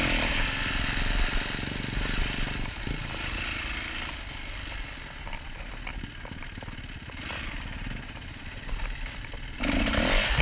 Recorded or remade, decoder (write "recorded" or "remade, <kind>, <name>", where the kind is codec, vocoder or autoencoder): recorded